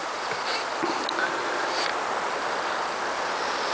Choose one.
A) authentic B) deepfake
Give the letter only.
A